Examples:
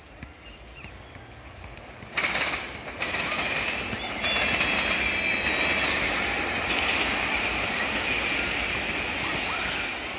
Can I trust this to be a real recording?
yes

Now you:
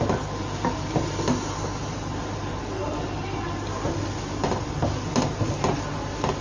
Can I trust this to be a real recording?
yes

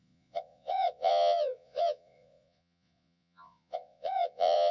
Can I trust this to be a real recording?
no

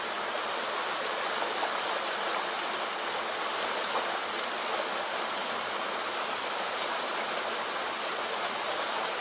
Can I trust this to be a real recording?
yes